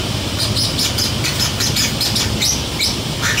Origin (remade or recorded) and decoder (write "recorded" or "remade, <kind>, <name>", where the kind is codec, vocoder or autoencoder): recorded